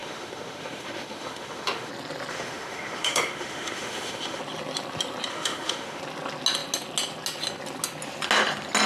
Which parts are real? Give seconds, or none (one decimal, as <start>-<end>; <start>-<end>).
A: 1.9-2.3; 4.4-5.3; 6.0-8.9